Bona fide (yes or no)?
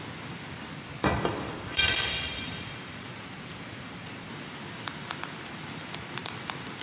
no